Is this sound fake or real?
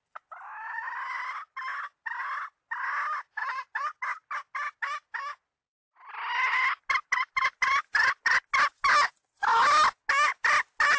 real